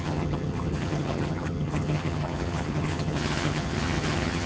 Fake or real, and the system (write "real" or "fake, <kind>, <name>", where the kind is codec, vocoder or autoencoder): fake, vocoder, HiFi-GAN